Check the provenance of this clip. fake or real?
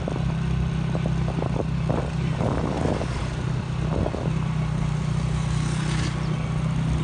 real